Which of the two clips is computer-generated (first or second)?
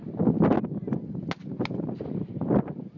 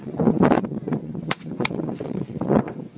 second